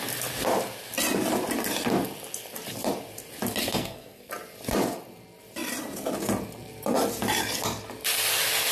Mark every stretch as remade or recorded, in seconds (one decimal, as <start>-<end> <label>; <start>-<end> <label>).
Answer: 0.0-3.6 recorded; 3.6-4.3 remade; 4.3-8.7 recorded